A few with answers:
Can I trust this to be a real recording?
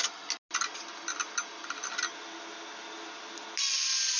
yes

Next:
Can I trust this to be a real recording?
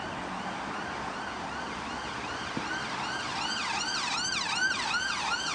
yes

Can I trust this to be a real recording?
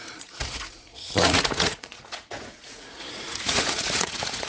no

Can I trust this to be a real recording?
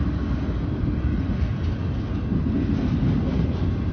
yes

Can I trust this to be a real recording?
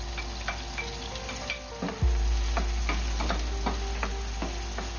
yes